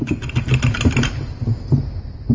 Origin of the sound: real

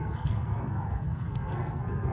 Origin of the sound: fake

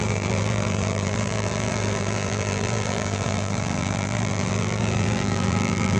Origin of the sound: fake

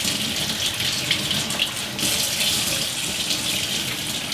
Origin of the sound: real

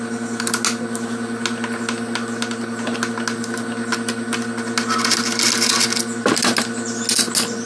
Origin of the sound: real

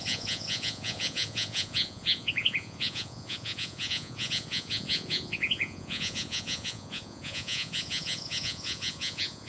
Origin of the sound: fake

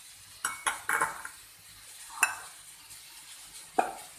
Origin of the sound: real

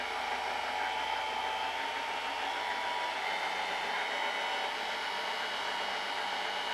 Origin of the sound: real